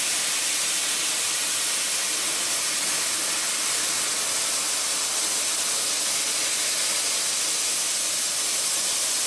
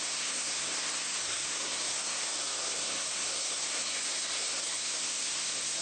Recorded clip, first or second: first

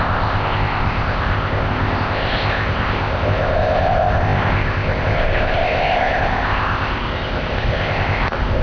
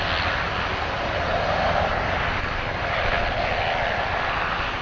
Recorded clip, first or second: second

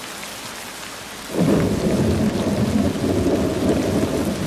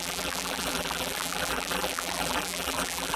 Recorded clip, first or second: first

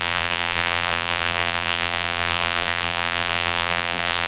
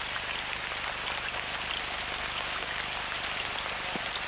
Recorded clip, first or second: second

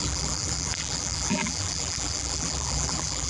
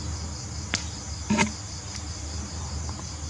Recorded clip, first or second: second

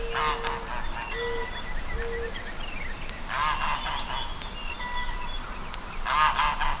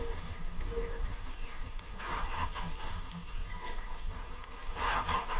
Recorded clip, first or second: first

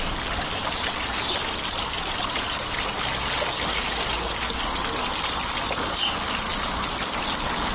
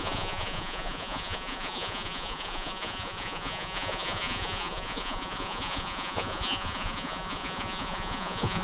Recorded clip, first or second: first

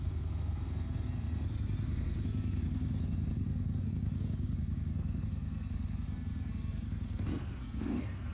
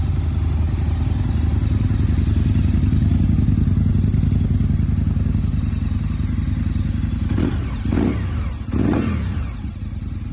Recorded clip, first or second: second